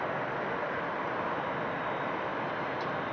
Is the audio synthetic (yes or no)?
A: no